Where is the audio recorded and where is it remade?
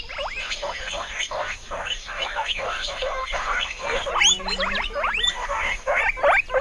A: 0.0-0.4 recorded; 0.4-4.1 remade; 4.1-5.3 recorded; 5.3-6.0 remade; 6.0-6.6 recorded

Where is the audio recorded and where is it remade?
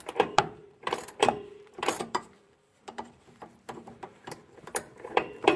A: 0.0-5.6 remade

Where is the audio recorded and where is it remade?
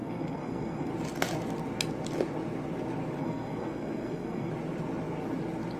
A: 0.0-0.9 remade; 0.9-3.2 recorded; 3.2-4.5 remade; 4.5-5.8 recorded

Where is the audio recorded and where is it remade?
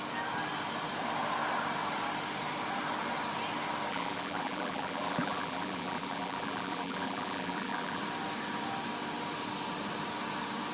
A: 0.0-3.9 recorded; 3.9-8.0 remade; 8.0-10.7 recorded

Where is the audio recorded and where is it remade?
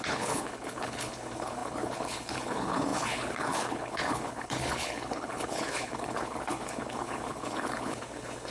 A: 0.0-8.5 remade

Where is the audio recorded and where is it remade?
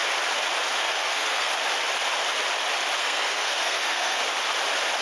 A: 0.0-0.8 recorded; 0.8-1.5 remade; 1.5-3.0 recorded; 3.0-4.2 remade; 4.2-5.0 recorded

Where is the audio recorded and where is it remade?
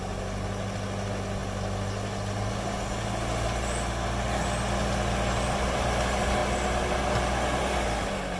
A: 0.0-8.4 recorded